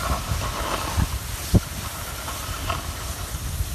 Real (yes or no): yes